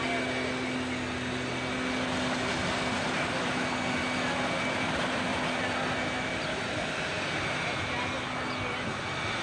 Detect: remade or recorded recorded